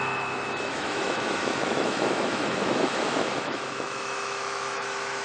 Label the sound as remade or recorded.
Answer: remade